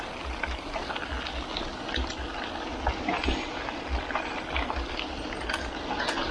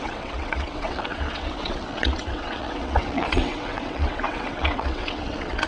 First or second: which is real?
first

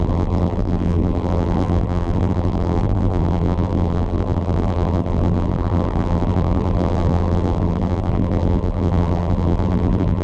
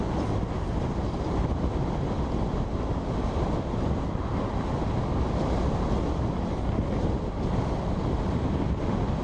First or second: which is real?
second